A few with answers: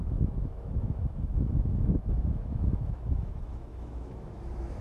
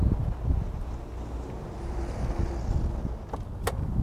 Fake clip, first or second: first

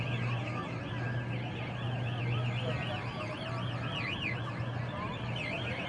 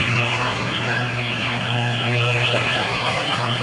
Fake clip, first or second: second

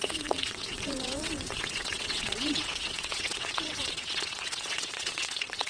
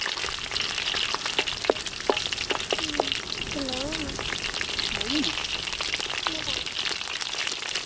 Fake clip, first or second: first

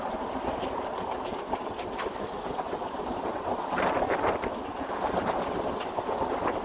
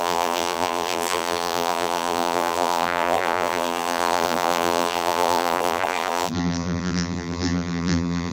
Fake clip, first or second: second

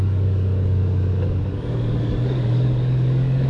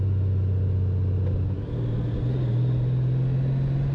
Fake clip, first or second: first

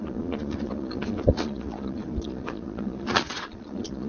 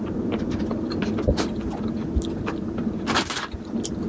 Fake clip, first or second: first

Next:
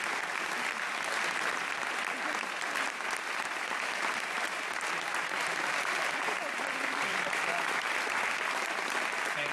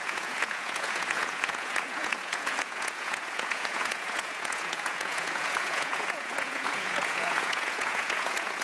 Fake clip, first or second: second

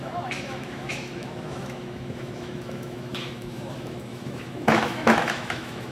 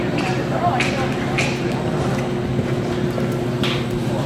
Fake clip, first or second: first